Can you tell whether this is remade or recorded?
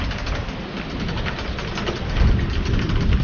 recorded